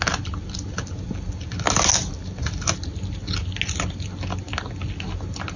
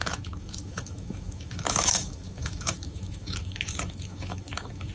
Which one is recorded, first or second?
first